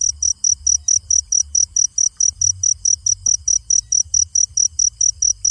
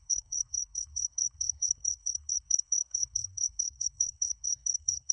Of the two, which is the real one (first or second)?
first